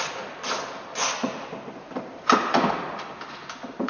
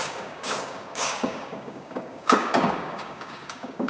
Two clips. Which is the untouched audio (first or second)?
first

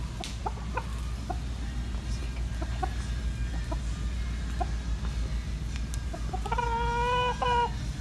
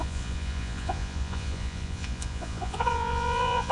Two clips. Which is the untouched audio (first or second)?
first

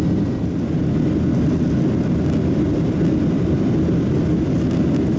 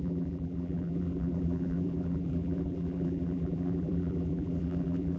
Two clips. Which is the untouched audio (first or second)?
first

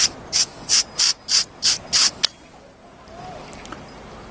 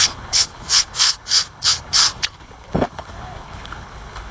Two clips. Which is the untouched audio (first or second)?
first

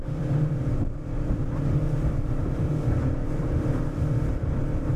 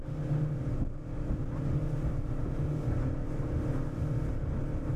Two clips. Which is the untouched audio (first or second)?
second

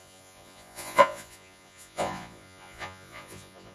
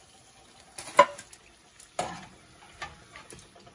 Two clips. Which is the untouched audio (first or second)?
second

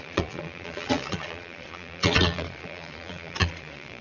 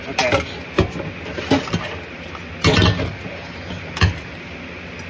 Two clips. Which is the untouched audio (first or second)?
second